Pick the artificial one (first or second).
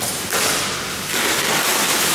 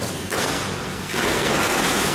second